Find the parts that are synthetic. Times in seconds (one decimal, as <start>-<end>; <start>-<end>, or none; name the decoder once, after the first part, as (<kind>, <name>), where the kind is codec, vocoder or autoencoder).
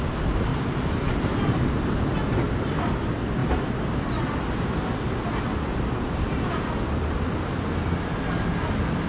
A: 0.0-3.4 (vocoder, BigVGAN v2); 5.4-9.1